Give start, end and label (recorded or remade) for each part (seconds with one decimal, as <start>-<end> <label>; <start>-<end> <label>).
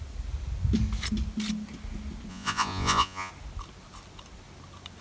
0.0-2.3 recorded; 2.3-3.3 remade; 3.3-5.0 recorded